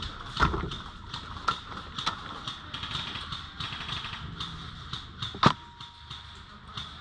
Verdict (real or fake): real